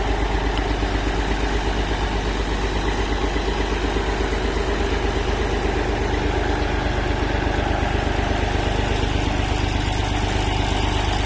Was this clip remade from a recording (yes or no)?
no